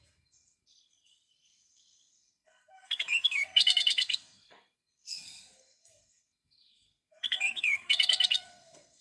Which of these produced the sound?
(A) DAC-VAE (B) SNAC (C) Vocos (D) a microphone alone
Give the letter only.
B